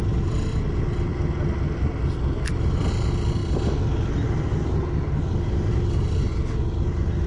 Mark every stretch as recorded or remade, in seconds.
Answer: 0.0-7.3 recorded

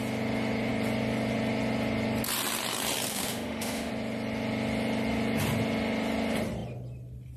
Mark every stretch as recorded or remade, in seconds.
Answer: 0.0-3.1 recorded; 3.1-3.9 remade; 3.9-7.4 recorded